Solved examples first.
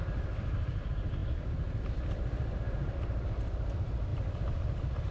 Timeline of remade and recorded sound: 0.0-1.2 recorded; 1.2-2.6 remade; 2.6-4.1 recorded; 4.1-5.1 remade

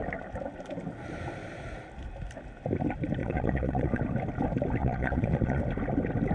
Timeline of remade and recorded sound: 0.0-3.2 recorded; 3.2-4.0 remade; 4.0-4.8 recorded; 4.8-5.6 remade; 5.6-6.3 recorded

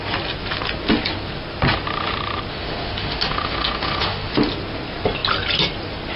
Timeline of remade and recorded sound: 0.0-2.5 recorded; 2.5-4.4 remade; 4.4-6.2 recorded

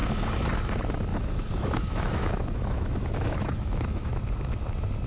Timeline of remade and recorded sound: 0.0-1.1 recorded; 1.1-4.2 remade; 4.2-5.1 recorded

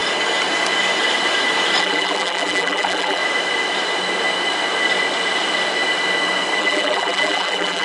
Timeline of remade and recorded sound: 0.0-1.8 recorded; 1.8-3.2 remade; 3.2-6.6 recorded; 6.6-7.8 remade

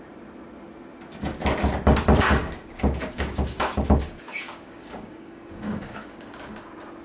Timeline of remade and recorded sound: 0.0-2.4 recorded; 2.4-6.6 remade; 6.6-7.0 recorded

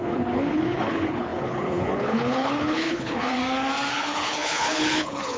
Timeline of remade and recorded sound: 0.0-3.4 remade; 3.4-3.9 recorded; 3.9-5.4 remade